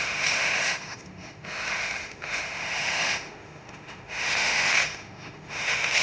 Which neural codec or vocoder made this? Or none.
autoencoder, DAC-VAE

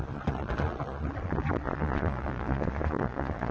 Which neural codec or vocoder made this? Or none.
vocoder, Vocos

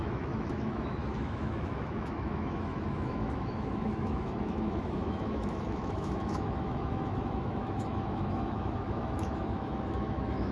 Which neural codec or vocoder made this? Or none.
autoencoder, DAC-VAE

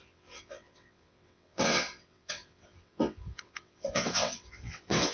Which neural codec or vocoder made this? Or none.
vocoder, WaveNeXt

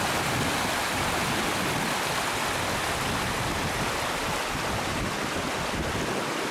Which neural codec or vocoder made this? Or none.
none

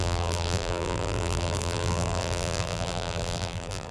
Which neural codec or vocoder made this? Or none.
vocoder, BigVGAN v2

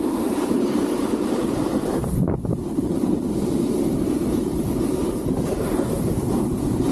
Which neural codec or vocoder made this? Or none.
vocoder, BigVGAN v2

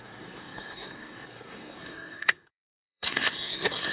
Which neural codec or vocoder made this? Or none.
codec, SNAC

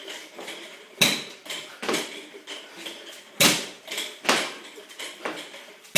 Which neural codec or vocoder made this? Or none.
vocoder, BigVGAN v2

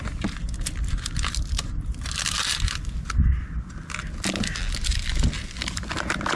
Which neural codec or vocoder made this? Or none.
none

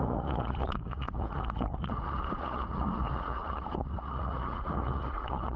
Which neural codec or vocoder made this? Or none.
vocoder, Vocos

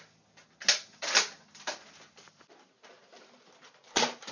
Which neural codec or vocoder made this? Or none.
none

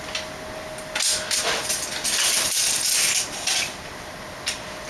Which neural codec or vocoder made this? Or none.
none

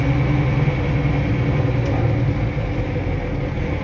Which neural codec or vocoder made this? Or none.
none